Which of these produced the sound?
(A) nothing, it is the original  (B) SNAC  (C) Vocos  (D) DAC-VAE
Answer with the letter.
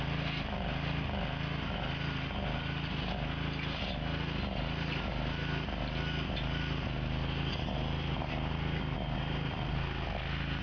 A